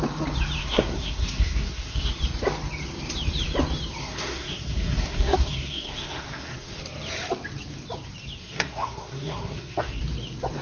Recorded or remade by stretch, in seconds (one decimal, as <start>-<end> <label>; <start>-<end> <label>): 0.0-0.6 recorded; 0.6-2.1 remade; 2.1-4.0 recorded; 4.0-6.8 remade; 6.8-8.4 recorded; 8.4-10.0 remade; 10.0-10.6 recorded